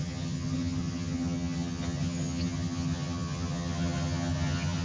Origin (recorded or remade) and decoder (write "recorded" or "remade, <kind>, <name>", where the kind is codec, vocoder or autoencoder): remade, vocoder, HiFi-GAN